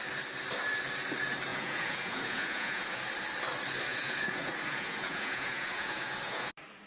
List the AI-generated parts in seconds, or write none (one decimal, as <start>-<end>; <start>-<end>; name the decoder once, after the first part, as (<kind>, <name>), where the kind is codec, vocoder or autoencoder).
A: 1.5-3.0 (vocoder, Vocos); 3.9-6.5